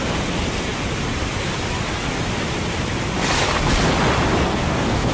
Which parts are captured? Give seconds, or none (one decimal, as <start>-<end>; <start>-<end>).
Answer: 0.0-4.5

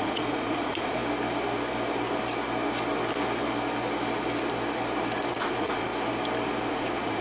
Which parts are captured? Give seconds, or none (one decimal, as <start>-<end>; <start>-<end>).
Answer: 1.0-5.3; 5.9-6.7